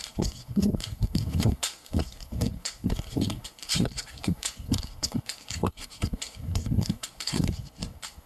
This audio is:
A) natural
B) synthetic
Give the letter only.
B